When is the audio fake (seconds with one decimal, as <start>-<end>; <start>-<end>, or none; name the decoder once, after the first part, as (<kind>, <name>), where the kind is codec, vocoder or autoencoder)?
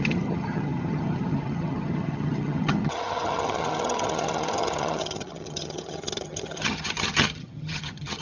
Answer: 0.0-8.2 (vocoder, HiFi-GAN)